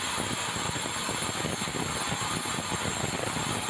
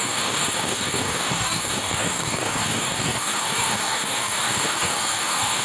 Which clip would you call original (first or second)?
first